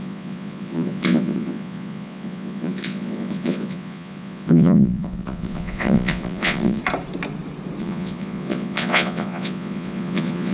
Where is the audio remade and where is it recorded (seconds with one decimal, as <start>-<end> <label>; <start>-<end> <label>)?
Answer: 0.0-6.8 remade; 6.8-7.8 recorded; 7.8-10.5 remade